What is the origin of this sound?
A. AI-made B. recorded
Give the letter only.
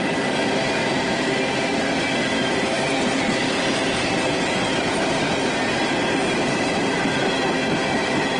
B